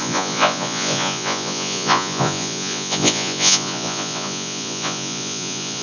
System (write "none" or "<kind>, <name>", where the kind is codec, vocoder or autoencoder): vocoder, Vocos